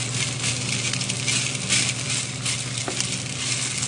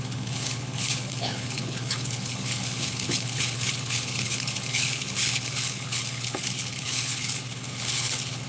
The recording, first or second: first